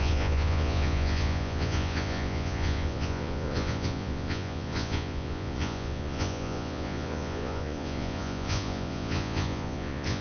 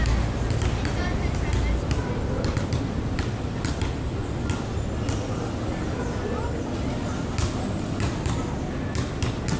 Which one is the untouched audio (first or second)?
second